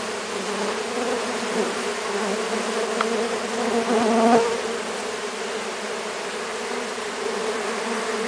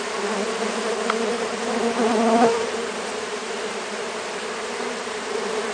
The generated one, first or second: second